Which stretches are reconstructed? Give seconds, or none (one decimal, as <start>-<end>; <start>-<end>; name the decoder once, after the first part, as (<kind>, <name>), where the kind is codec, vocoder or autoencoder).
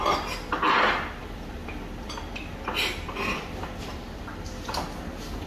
1.2-4.5 (vocoder, BigVGAN v2)